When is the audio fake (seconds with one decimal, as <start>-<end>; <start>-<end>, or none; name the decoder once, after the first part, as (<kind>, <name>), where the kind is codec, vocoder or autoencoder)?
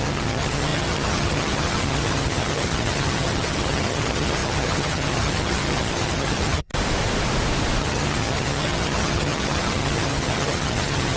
0.0-6.7 (vocoder, HiFi-GAN); 7.8-11.2